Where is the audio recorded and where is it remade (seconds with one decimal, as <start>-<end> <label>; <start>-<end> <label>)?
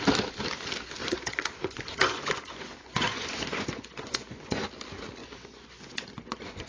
0.0-1.0 recorded; 1.0-4.6 remade; 4.6-5.2 recorded; 5.2-6.7 remade